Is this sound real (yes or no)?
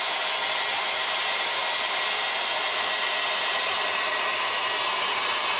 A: yes